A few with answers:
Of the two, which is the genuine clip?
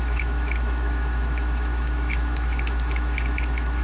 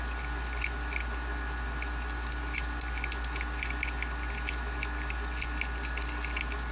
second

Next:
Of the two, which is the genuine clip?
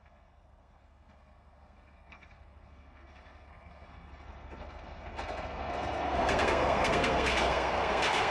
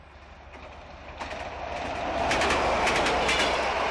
second